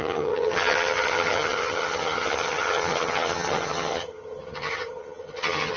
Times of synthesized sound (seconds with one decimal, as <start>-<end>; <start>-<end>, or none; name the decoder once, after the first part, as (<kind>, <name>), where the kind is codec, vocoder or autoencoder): 0.0-5.8 (vocoder, HiFi-GAN)